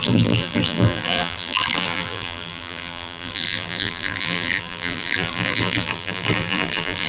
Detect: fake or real fake